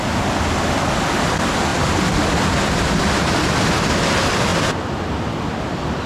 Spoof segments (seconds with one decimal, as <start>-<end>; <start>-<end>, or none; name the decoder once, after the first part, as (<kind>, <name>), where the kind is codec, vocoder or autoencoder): none

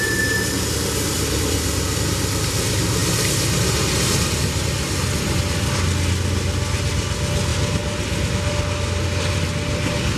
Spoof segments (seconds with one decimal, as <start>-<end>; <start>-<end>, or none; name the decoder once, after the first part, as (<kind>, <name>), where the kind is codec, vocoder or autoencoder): none